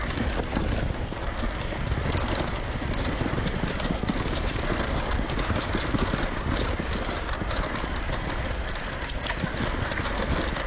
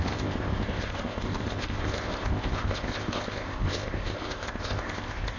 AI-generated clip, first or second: second